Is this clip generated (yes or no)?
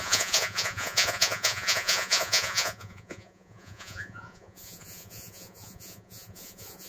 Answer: yes